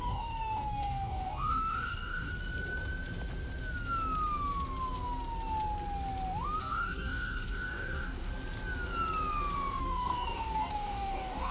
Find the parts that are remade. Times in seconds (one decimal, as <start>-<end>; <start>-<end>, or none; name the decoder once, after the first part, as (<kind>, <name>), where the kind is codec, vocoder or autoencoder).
0.0-2.3 (codec, DAC); 6.6-8.3; 9.8-11.5